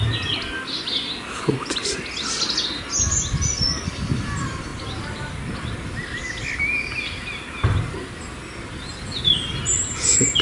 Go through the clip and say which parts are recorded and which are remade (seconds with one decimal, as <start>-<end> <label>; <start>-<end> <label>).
0.0-10.4 recorded